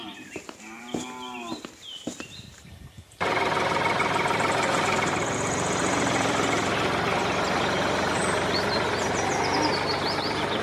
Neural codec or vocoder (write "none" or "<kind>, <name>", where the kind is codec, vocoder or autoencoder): vocoder, BigVGAN v2